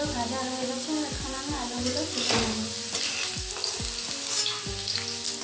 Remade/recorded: recorded